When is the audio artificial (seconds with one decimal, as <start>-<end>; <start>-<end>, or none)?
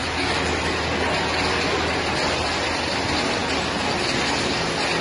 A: none